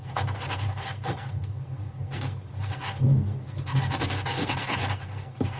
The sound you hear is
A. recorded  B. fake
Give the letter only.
B